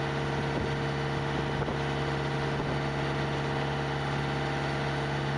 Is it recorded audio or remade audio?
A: recorded